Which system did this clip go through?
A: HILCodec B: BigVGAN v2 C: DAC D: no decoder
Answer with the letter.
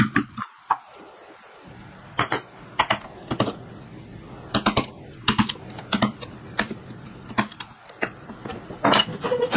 B